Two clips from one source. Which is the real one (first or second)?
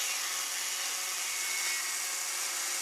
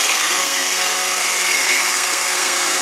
first